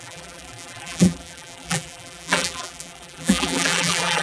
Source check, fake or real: fake